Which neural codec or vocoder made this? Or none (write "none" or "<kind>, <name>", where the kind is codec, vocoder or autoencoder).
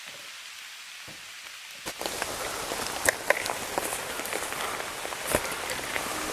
none